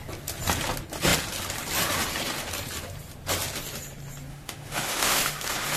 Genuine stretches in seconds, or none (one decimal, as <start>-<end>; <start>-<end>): 0.0-4.3